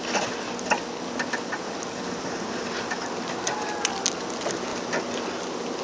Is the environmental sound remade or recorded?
recorded